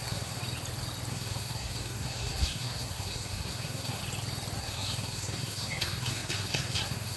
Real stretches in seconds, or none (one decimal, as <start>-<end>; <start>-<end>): 0.4-1.1; 4.0-4.6